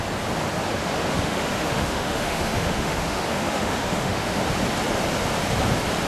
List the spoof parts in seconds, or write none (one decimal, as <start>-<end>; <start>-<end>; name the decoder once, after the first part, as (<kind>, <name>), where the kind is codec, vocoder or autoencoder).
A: 1.1-4.4 (autoencoder, DAC-VAE)